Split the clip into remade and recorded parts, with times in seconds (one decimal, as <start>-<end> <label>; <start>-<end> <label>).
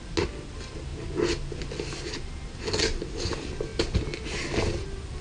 0.0-5.2 recorded